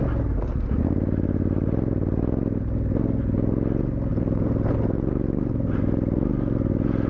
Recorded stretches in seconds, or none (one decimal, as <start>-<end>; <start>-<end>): 0.0-4.1; 5.8-7.1